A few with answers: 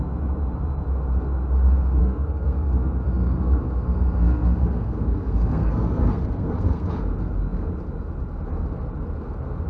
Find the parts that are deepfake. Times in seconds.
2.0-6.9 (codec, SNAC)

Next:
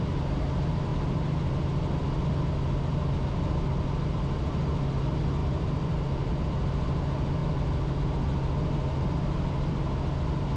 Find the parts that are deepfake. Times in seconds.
none

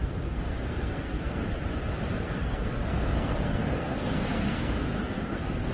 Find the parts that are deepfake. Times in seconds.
0.0-1.4 (codec, SNAC); 2.2-5.7

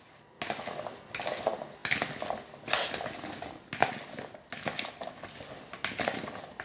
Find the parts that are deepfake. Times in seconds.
none